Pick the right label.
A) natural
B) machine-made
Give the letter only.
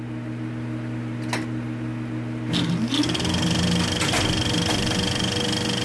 A